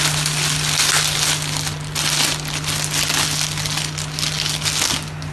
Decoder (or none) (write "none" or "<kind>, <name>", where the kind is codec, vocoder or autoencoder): none